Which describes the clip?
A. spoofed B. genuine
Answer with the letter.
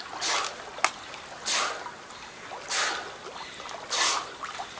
B